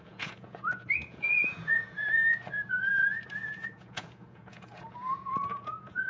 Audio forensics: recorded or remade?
remade